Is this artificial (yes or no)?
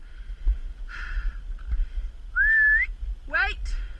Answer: no